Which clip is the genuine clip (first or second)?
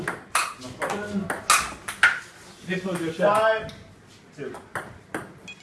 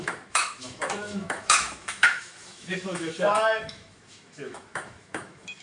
first